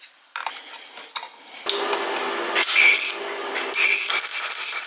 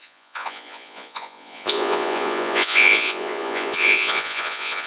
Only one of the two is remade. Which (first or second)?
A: second